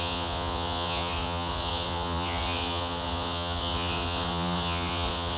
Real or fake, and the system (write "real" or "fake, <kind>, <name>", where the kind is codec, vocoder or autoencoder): fake, vocoder, Vocos